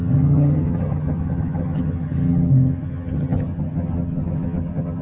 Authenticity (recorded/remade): remade